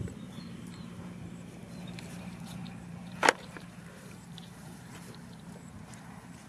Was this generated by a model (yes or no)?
yes